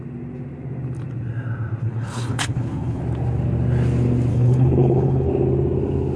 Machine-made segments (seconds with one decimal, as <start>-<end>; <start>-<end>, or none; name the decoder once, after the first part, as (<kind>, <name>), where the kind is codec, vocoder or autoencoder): 1.8-3.0 (codec, HILCodec); 4.3-5.3